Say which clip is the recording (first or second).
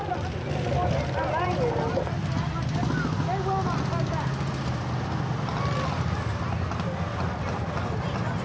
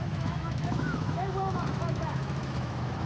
first